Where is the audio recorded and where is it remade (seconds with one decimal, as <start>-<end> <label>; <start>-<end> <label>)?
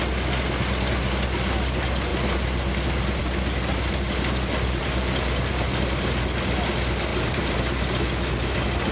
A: 0.0-7.1 recorded; 7.1-8.0 remade; 8.0-8.9 recorded